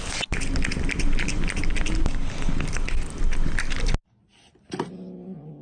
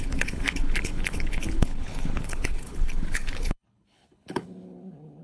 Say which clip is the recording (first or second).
first